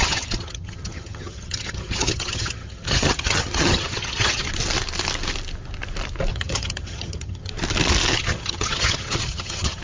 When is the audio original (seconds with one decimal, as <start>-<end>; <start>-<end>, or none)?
4.5-6.3; 7.5-8.1